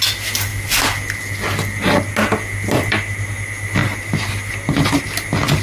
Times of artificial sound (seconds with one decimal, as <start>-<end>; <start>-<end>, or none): 3.8-4.3